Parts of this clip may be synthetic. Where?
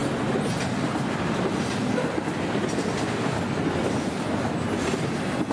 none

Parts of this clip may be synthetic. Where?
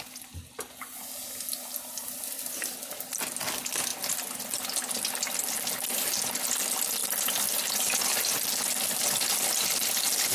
2.0-3.3 (vocoder, BigVGAN v2); 7.0-7.7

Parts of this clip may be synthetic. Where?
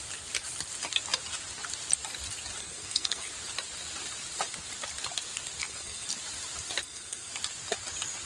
2.6-3.3 (codec, SNAC); 5.6-6.1; 6.8-7.3